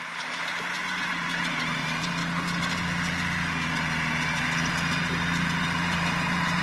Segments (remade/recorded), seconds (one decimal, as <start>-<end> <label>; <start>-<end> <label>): 0.0-2.2 remade; 2.2-4.7 recorded; 4.7-6.6 remade